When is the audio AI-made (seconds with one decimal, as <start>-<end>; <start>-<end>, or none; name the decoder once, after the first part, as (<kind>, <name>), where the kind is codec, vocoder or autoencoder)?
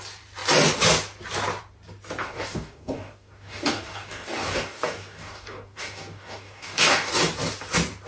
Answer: 2.2-7.1 (codec, DAC)